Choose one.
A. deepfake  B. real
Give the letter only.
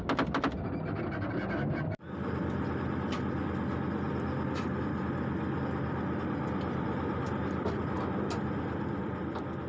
B